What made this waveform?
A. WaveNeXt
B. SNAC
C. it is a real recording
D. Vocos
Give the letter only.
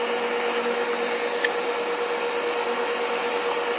C